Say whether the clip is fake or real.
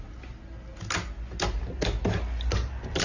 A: real